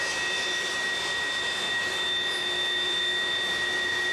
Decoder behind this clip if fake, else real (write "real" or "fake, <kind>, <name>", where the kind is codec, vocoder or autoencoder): real